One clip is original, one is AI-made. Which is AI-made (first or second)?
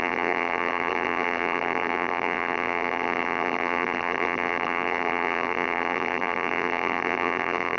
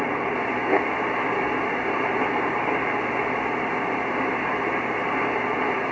first